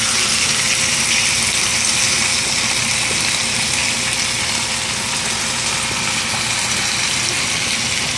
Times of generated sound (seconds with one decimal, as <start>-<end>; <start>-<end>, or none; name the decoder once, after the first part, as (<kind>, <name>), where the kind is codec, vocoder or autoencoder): none